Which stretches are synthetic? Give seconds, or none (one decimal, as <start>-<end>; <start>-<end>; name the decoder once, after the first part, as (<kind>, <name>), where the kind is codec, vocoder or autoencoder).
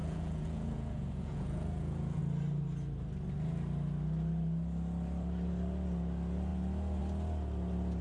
0.0-2.2 (vocoder, Vocos)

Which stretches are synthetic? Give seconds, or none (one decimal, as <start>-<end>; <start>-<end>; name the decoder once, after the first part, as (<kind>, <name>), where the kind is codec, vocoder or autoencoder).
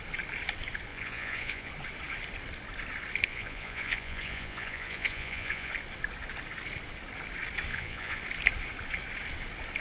0.9-1.7 (vocoder, Vocos); 3.3-5.7; 7.7-8.2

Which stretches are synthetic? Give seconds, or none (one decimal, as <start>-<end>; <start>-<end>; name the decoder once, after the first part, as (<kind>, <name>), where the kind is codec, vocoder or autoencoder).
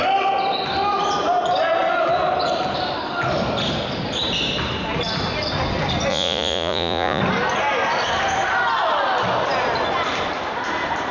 6.1-7.2 (vocoder, Vocos)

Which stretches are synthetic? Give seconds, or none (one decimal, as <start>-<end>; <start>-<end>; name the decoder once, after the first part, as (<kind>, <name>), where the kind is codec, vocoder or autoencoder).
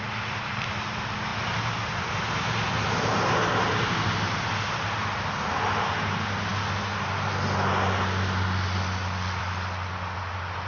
none